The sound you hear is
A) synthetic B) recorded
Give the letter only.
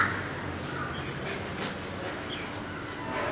B